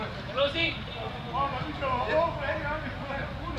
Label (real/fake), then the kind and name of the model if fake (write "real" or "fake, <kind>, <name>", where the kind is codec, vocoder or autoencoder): real